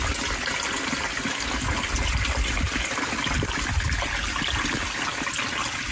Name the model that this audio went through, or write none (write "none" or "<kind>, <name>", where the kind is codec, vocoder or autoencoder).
none